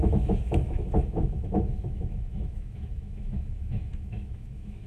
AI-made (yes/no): yes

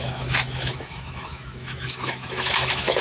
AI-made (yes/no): yes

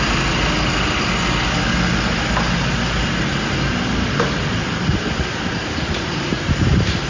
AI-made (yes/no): no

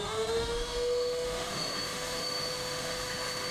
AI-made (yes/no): yes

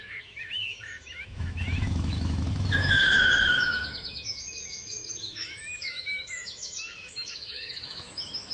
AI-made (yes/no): yes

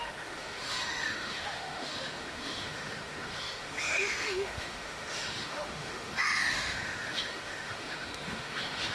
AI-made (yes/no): yes